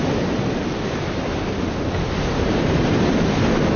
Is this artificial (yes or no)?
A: no